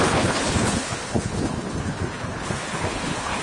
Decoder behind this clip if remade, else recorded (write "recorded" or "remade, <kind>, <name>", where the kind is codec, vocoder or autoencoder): remade, codec, HILCodec